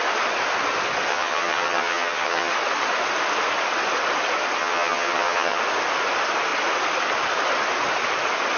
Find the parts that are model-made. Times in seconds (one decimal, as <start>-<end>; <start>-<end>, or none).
1.1-2.5; 4.6-5.6